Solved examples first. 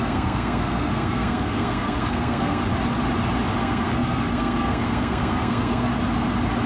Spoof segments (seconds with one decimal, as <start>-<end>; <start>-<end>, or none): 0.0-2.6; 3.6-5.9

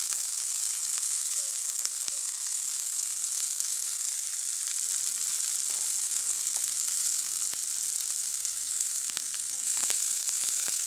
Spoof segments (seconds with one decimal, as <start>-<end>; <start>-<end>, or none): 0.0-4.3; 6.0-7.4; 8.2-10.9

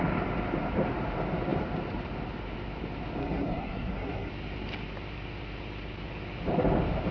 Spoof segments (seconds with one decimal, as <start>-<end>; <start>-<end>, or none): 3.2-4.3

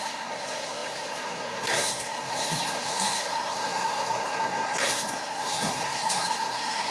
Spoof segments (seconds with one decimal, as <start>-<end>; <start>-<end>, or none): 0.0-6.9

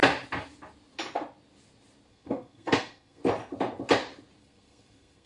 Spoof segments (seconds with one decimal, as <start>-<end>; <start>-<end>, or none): 2.1-3.2; 4.4-5.3